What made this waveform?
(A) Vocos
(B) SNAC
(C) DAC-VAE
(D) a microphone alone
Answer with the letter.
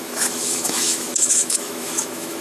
C